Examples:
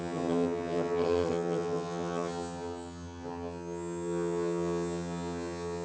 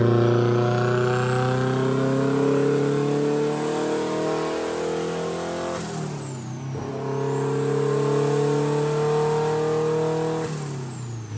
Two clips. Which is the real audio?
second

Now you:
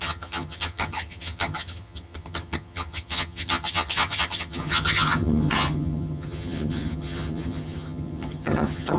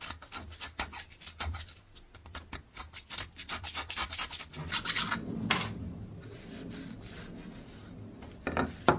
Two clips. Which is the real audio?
second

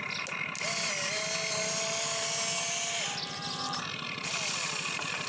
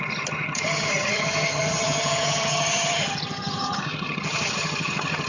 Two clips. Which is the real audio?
first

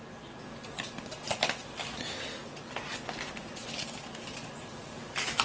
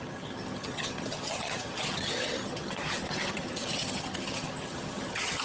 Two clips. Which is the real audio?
first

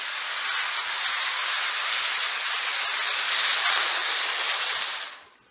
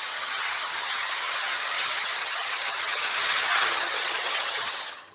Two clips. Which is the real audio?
first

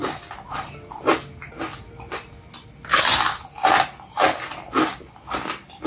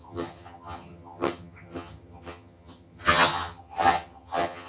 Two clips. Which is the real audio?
first